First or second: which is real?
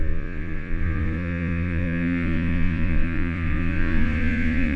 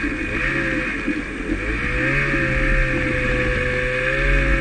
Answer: second